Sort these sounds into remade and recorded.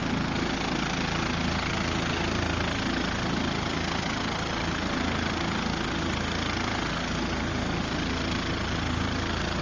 recorded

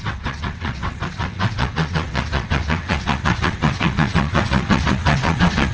remade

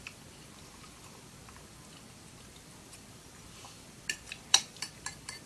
remade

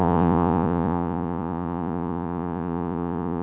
remade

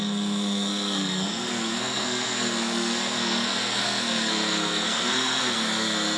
remade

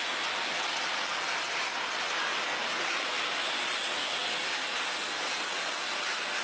recorded